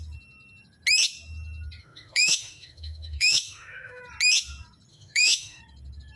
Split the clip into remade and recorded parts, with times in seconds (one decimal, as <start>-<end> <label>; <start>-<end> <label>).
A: 0.0-1.8 recorded; 1.8-4.0 remade; 4.0-4.9 recorded; 4.9-5.6 remade; 5.6-6.2 recorded